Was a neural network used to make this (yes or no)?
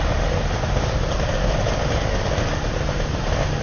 no